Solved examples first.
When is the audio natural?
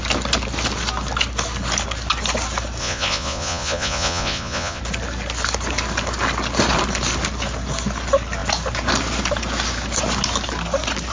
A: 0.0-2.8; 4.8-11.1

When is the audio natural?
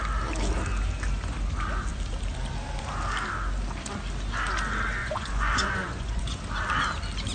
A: 0.0-5.0; 6.4-7.3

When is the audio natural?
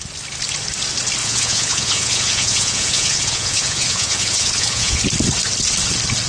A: 0.0-1.2; 5.0-6.3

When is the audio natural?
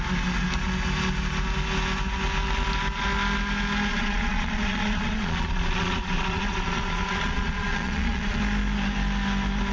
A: 0.0-3.9; 8.4-9.7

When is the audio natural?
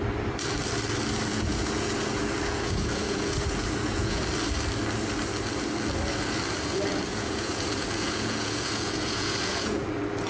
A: 0.0-1.3; 4.2-7.1; 9.9-10.3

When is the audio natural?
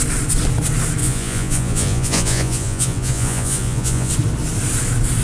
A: 0.0-1.0; 4.1-5.2